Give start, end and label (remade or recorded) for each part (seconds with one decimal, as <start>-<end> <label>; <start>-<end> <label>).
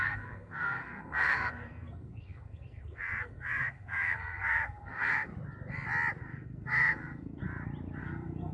0.0-5.3 remade; 5.3-6.2 recorded; 6.2-7.4 remade; 7.4-8.0 recorded; 8.0-8.5 remade